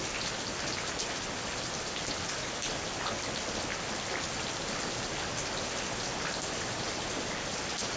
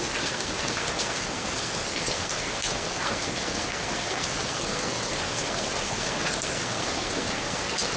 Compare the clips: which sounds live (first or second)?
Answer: first